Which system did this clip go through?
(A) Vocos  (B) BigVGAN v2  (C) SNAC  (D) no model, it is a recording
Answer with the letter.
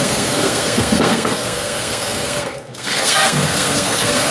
C